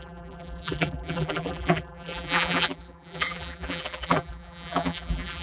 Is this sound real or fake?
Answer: fake